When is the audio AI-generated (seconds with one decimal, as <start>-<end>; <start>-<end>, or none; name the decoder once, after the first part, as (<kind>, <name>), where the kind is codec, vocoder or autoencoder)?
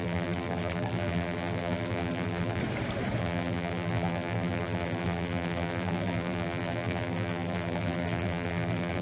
0.0-2.6 (vocoder, BigVGAN v2); 3.2-9.0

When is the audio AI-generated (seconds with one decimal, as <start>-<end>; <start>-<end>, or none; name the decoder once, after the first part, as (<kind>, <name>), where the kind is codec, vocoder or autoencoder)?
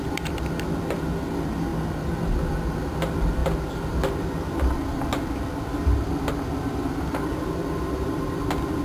none